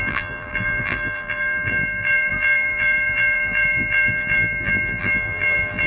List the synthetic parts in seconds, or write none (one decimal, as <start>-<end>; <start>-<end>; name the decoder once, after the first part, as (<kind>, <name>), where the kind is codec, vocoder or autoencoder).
0.0-5.9 (vocoder, BigVGAN v2)